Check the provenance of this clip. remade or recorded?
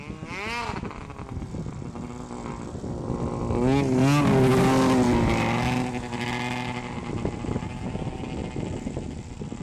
recorded